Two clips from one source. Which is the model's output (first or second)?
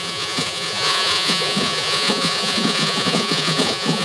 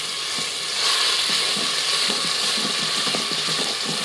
first